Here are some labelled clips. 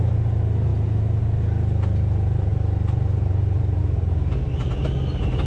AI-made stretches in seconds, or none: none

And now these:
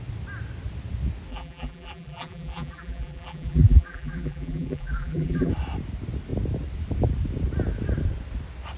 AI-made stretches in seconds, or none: 1.3-5.5 (vocoder, BigVGAN v2)